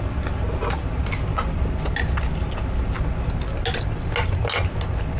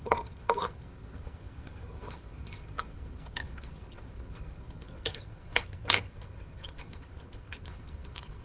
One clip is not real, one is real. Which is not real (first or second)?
second